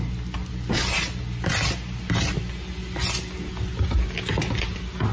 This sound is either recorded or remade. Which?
recorded